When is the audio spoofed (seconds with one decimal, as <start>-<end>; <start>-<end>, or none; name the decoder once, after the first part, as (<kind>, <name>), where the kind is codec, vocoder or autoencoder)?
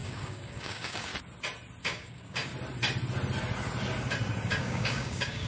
0.0-1.1 (codec, DAC); 1.8-2.5; 4.6-5.5